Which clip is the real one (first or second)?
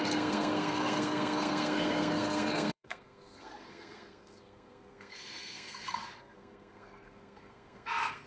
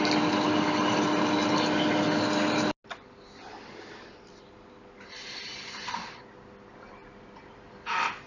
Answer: second